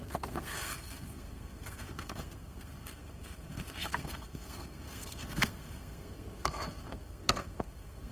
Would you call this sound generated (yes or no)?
yes